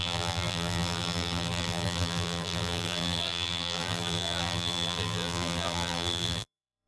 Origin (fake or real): fake